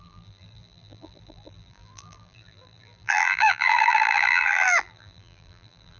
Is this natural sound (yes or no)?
no